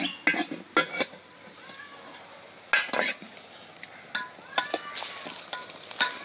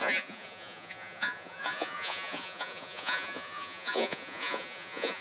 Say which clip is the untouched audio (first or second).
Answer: first